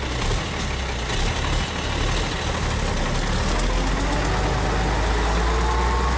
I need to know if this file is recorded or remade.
recorded